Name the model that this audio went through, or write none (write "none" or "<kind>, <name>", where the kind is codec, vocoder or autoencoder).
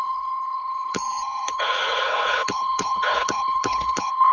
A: codec, HILCodec